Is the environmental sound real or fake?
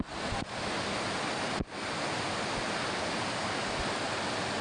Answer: real